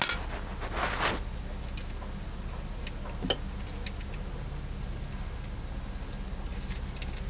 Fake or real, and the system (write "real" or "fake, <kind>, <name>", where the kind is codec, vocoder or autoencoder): real